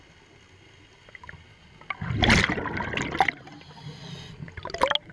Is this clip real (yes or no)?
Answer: yes